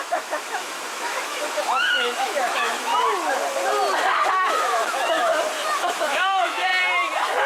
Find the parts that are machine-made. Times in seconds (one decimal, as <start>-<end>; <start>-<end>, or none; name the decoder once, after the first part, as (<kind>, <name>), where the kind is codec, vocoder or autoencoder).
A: 0.0-2.9 (autoencoder, DAC-VAE); 4.5-5.3; 5.8-6.7